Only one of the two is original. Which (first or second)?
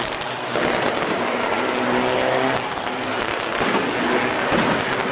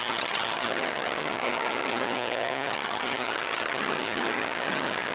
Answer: first